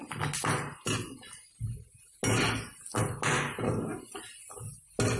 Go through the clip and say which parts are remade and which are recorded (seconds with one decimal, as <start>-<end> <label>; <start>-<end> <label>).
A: 0.0-5.2 recorded